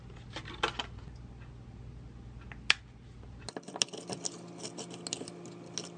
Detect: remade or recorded recorded